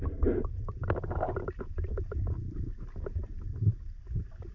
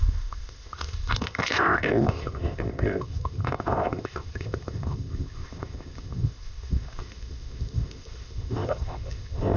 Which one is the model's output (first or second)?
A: second